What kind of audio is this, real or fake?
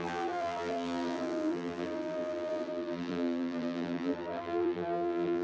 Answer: fake